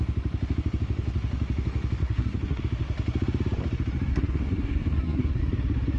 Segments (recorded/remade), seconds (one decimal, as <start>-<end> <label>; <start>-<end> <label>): 0.0-2.0 recorded; 2.0-2.6 remade; 2.6-4.1 recorded; 4.1-5.4 remade; 5.4-6.0 recorded